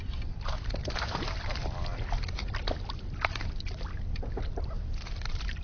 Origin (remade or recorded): recorded